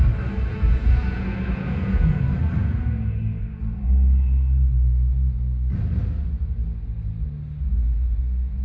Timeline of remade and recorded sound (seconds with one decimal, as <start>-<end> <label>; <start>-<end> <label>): 0.0-0.5 recorded; 0.5-2.2 remade; 2.2-2.6 recorded; 2.6-3.6 remade; 3.6-7.7 recorded; 7.7-8.2 remade; 8.2-8.6 recorded